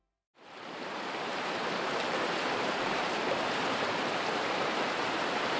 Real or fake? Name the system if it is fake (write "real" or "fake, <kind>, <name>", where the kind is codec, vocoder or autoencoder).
fake, vocoder, BigVGAN v2